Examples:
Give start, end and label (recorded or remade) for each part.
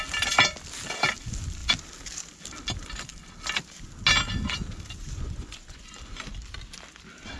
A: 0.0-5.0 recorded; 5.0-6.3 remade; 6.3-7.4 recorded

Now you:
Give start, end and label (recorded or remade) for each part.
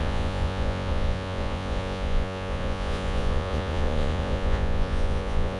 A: 0.0-5.6 remade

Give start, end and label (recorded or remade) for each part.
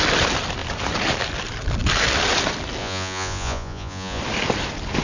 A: 0.0-2.8 recorded; 2.8-4.2 remade; 4.2-5.0 recorded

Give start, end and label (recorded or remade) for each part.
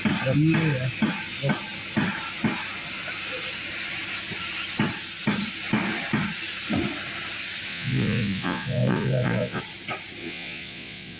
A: 0.0-7.7 recorded; 7.7-9.6 remade; 9.6-10.2 recorded; 10.2-11.2 remade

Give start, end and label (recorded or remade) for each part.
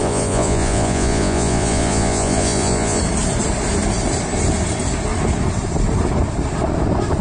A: 0.0-3.0 remade; 3.0-7.2 recorded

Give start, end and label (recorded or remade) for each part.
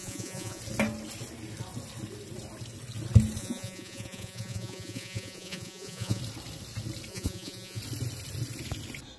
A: 0.0-0.6 remade; 0.6-3.4 recorded; 3.4-6.2 remade; 6.2-7.1 recorded; 7.1-7.8 remade; 7.8-9.2 recorded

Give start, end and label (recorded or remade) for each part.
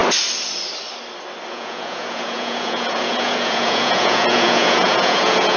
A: 0.0-1.5 recorded; 1.5-5.6 remade